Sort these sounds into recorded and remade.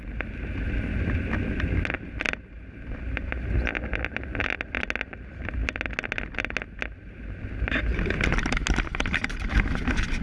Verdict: recorded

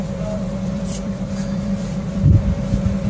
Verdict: remade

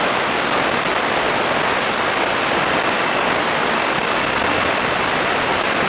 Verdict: recorded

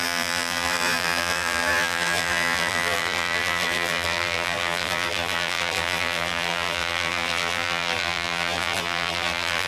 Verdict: remade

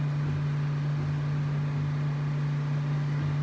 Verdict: recorded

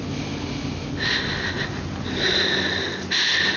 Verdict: recorded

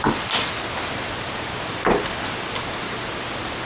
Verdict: recorded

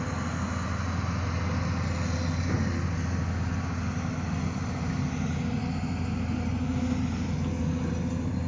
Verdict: recorded